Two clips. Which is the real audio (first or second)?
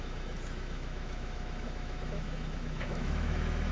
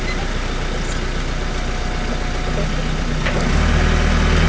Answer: second